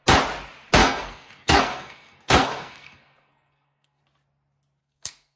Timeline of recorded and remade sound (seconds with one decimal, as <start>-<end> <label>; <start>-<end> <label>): 0.0-0.8 recorded; 0.8-4.0 remade; 4.0-4.8 recorded; 4.8-5.4 remade